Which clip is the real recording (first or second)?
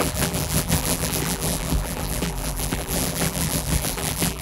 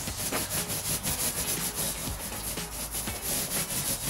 second